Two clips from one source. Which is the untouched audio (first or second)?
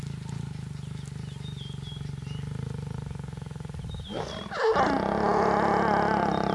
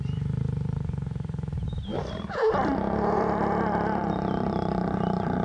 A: first